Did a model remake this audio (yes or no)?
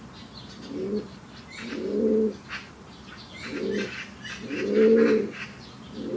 no